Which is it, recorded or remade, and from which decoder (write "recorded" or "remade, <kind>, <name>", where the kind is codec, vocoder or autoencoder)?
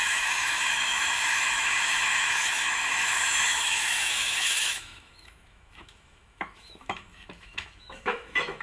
remade, autoencoder, DAC-VAE